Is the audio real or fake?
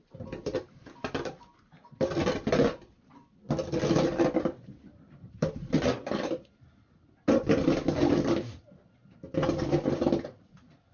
fake